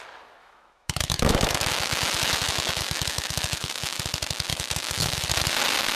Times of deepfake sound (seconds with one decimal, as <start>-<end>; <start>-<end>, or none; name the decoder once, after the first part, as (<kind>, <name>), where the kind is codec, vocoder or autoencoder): 0.4-4.0 (autoencoder, DAC-VAE); 4.5-5.3